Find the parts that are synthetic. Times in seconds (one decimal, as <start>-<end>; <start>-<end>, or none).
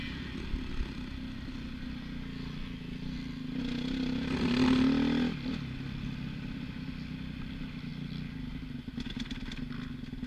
none